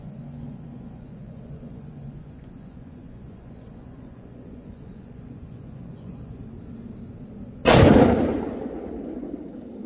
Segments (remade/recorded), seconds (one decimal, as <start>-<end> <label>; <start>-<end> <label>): 0.0-6.4 remade; 6.4-9.9 recorded

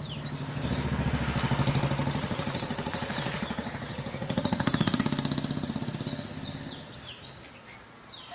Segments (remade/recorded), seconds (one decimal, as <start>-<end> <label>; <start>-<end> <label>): 0.0-2.2 recorded; 2.2-5.0 remade; 5.0-8.3 recorded

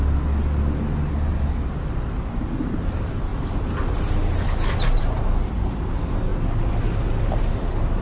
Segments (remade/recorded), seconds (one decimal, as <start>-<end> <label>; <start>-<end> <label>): 0.0-8.0 recorded

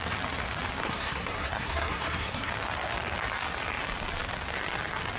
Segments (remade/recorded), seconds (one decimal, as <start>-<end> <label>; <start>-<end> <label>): 0.0-0.8 recorded; 0.8-2.5 remade; 2.5-5.2 recorded

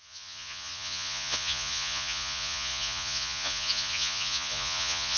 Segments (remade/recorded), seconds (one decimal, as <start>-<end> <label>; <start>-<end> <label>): 0.0-5.2 remade

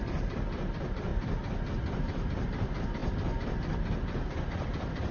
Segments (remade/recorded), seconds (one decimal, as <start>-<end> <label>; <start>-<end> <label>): 0.0-1.1 remade; 1.1-1.7 recorded; 1.7-3.0 remade; 3.0-4.5 recorded; 4.5-5.1 remade

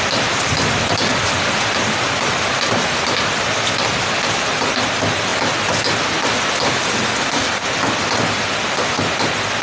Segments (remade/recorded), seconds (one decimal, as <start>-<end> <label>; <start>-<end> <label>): 0.0-9.6 recorded